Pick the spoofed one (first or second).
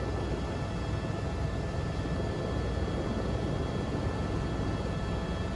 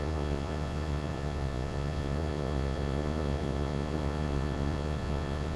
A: second